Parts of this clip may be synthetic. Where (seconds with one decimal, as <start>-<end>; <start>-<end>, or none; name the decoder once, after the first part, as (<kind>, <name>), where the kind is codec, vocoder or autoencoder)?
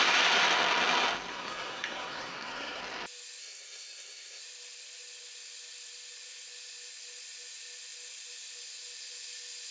1.3-2.8 (codec, SNAC); 3.4-4.4